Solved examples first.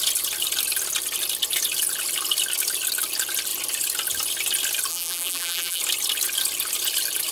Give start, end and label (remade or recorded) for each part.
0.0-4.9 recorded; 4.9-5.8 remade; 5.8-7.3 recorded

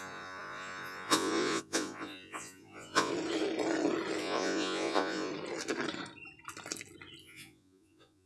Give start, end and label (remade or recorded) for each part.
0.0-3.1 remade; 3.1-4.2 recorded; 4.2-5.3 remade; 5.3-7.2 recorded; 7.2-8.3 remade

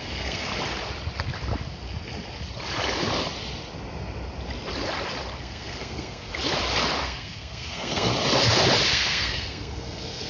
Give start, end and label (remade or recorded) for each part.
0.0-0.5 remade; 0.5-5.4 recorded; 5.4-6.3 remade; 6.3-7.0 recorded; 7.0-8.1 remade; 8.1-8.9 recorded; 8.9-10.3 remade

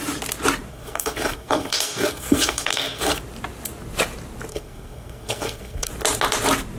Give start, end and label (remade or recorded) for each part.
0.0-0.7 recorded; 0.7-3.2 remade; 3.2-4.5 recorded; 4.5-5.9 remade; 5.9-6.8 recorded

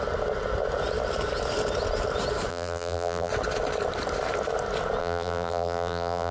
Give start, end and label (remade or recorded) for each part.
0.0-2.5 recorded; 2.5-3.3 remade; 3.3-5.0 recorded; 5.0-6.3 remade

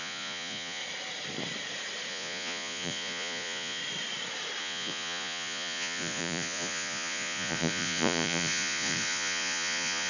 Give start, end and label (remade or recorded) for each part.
0.0-0.8 remade; 0.8-2.1 recorded; 2.1-3.8 remade; 3.8-4.6 recorded; 4.6-10.1 remade